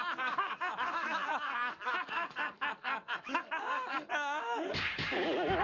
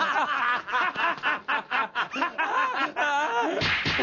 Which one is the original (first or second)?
second